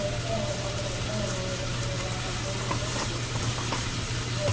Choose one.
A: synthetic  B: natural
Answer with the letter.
B